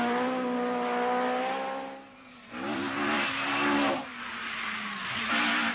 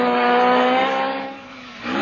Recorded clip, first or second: first